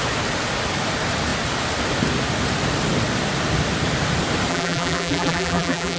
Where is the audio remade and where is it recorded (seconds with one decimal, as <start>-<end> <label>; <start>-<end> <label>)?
0.0-4.5 recorded; 4.5-6.0 remade

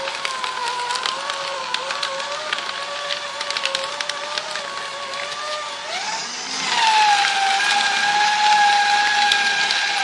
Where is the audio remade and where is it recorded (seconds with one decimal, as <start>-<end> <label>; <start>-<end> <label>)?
0.0-0.6 recorded; 0.6-3.4 remade; 3.4-10.0 recorded

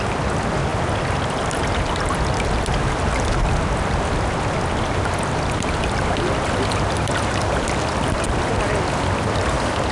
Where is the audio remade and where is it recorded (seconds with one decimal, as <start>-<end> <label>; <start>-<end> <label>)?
0.0-9.9 recorded

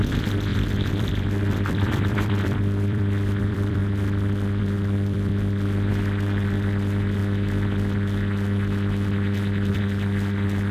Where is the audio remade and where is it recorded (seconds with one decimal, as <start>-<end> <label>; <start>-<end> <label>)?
0.0-3.8 remade; 3.8-4.6 recorded; 4.6-5.3 remade; 5.3-5.9 recorded; 5.9-7.2 remade; 7.2-9.8 recorded; 9.8-10.7 remade